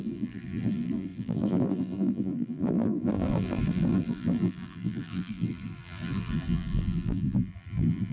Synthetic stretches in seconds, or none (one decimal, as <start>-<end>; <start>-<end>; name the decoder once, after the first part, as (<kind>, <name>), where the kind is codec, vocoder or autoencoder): 0.0-8.1 (vocoder, BigVGAN v2)

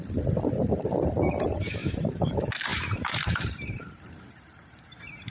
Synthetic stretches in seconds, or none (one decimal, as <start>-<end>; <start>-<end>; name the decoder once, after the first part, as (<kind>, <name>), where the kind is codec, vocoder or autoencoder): 0.0-5.3 (vocoder, BigVGAN v2)

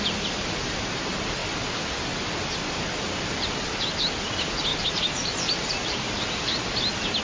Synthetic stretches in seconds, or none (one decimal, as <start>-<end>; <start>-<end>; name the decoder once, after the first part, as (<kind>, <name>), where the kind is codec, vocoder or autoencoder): none

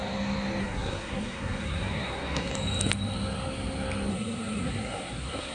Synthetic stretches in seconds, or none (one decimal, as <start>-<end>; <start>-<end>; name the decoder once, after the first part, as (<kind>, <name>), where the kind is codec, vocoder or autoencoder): 0.6-2.5 (codec, SNAC); 4.1-5.5

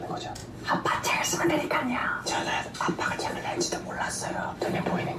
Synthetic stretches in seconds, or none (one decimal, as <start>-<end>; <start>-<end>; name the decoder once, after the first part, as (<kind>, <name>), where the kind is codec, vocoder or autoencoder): none